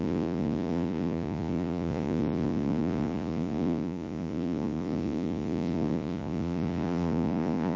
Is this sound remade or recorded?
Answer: remade